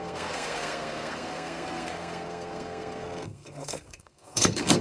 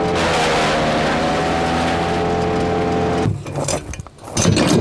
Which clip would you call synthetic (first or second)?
first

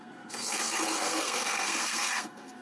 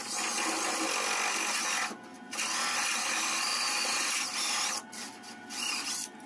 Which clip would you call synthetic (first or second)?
first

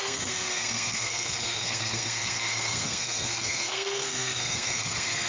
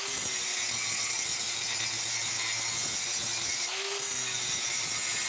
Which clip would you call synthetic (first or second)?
first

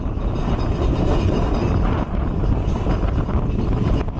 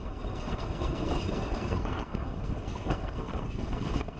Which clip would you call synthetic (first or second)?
second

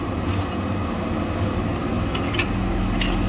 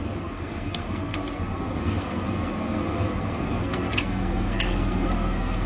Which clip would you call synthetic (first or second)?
second